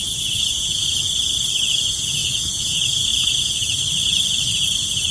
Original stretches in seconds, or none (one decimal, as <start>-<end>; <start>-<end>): 0.8-1.8; 3.1-5.1